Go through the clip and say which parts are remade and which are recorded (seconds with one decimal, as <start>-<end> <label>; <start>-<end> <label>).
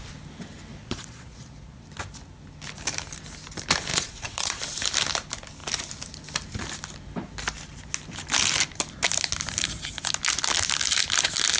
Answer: 0.0-0.7 recorded; 0.7-1.8 remade; 1.8-3.9 recorded; 3.9-4.6 remade; 4.6-11.6 recorded